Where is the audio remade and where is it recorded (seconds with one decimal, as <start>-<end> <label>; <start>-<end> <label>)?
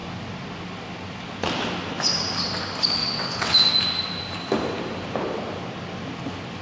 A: 0.0-3.0 recorded; 3.0-3.7 remade; 3.7-6.6 recorded